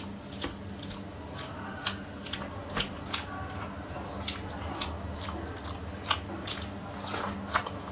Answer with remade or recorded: recorded